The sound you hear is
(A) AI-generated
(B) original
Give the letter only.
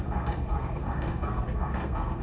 A